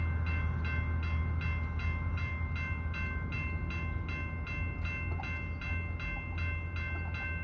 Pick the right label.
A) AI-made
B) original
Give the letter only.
B